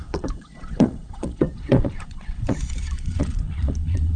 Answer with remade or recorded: remade